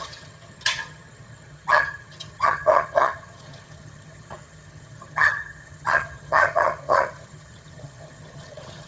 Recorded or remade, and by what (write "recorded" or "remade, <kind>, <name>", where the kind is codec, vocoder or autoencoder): remade, vocoder, HiFi-GAN